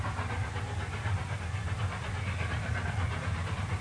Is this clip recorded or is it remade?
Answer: recorded